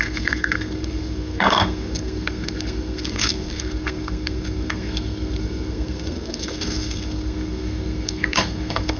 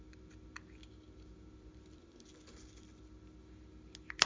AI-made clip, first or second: first